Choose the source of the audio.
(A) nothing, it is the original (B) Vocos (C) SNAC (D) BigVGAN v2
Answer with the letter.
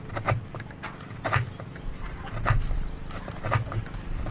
A